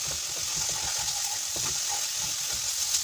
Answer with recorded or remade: recorded